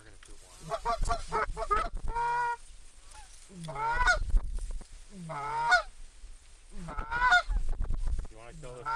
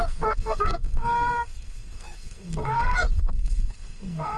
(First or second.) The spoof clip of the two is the second